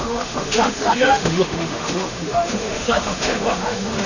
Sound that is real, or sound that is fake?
fake